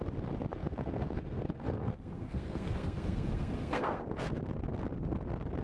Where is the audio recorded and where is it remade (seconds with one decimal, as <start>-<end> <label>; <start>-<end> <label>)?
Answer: 0.0-0.6 recorded; 0.6-4.0 remade; 4.0-5.6 recorded